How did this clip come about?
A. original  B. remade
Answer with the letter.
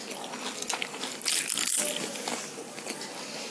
A